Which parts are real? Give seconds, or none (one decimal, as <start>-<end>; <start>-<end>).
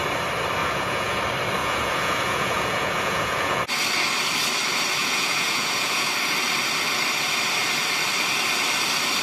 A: 0.0-0.6; 1.2-1.6; 3.6-5.0; 6.1-9.2